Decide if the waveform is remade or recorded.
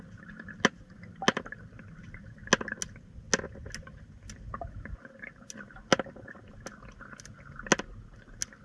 recorded